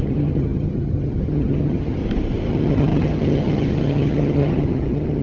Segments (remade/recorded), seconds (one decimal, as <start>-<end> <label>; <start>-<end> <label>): 0.0-2.0 remade; 2.0-2.5 recorded; 2.5-5.2 remade